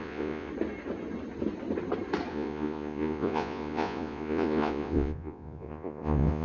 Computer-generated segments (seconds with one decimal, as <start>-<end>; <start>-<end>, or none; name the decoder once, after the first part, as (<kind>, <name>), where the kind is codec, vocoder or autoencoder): 0.0-0.5 (vocoder, Vocos); 2.3-6.4